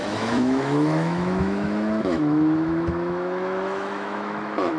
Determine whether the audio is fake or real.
fake